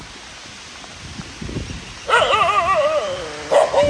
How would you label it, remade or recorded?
recorded